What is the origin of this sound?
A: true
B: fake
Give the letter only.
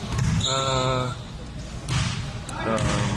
A